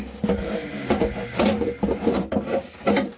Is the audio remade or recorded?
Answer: remade